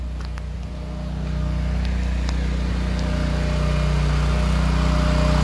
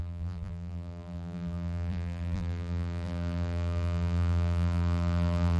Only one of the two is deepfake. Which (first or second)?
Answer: second